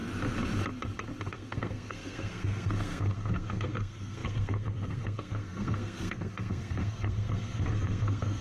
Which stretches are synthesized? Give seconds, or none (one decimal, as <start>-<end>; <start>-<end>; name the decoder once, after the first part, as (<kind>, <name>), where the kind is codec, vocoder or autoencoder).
1.3-8.4 (codec, SNAC)